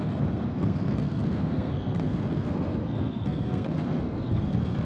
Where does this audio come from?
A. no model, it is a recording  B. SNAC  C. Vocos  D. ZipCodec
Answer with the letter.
B